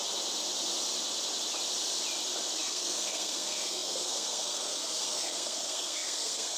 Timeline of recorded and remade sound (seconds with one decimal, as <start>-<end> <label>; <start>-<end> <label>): 0.0-2.6 recorded; 2.6-6.6 remade